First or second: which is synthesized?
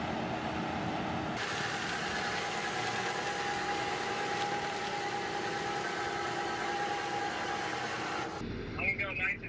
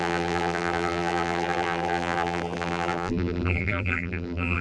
second